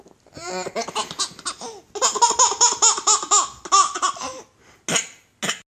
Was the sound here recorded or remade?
recorded